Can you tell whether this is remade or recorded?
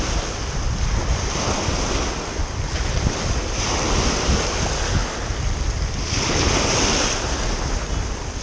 recorded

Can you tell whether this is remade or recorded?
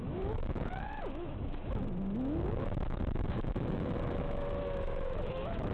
remade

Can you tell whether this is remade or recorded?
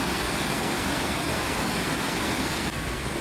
remade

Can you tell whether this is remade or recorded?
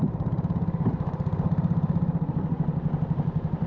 remade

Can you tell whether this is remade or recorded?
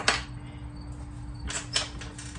recorded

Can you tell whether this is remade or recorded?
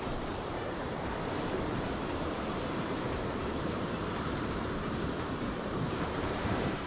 remade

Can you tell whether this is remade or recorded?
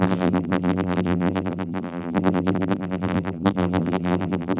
remade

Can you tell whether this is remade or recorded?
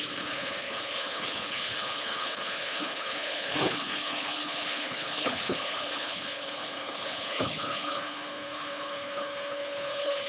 remade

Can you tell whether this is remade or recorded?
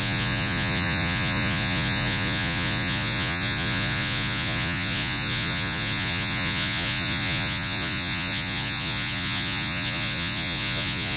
remade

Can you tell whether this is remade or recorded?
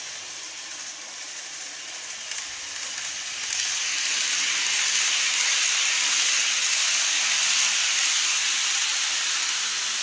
recorded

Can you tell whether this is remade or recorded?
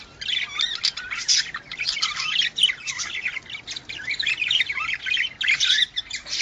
recorded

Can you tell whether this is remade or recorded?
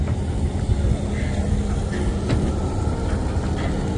recorded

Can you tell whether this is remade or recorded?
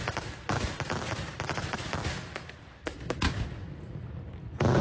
remade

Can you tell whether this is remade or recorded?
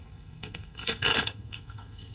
remade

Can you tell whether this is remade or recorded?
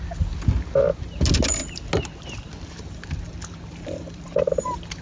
recorded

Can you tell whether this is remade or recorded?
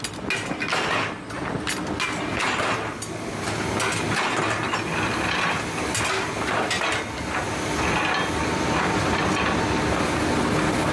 recorded